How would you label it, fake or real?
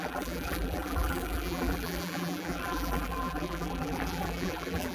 fake